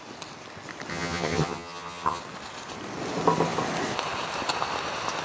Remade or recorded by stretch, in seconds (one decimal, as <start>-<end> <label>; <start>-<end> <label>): 0.0-0.9 recorded; 0.9-2.2 remade; 2.2-5.2 recorded